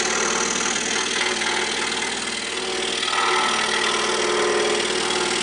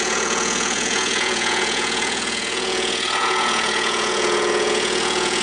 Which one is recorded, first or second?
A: first